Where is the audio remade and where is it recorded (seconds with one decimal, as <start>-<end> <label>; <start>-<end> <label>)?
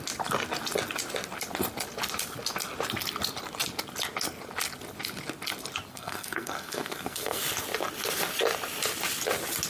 0.0-5.9 recorded; 5.9-7.4 remade; 7.4-9.7 recorded